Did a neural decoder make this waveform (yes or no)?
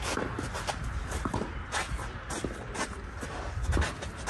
no